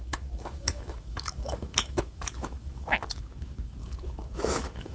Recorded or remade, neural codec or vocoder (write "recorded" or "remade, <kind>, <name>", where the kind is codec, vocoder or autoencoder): remade, autoencoder, DAC-VAE